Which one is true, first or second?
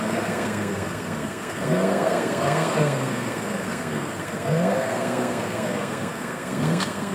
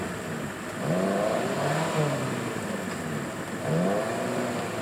second